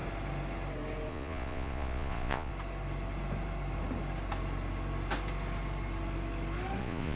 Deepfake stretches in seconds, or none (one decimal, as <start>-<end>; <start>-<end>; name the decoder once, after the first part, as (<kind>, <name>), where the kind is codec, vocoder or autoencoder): 1.1-2.5 (vocoder, Vocos); 6.8-7.2